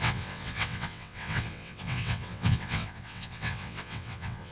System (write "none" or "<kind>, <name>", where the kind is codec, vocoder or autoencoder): vocoder, WaveNeXt